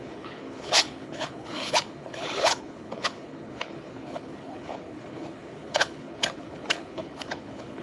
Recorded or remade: remade